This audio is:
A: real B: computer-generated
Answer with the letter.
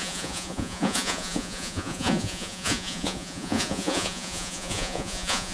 B